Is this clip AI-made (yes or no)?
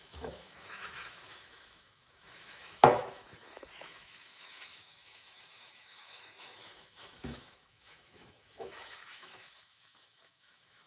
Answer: yes